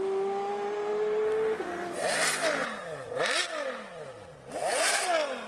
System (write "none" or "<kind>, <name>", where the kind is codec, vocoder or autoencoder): none